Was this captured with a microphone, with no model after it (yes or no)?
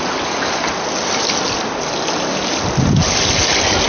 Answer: yes